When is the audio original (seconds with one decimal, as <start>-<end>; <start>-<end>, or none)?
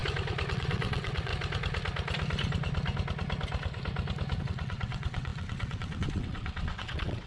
0.0-0.5; 1.3-4.4